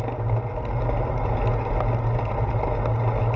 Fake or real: real